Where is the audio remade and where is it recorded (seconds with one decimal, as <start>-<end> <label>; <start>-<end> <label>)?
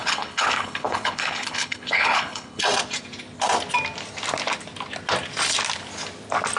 0.0-2.6 remade; 2.6-6.6 recorded